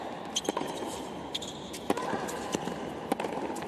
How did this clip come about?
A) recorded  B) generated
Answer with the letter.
A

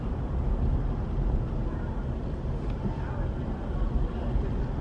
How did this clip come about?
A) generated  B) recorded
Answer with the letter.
B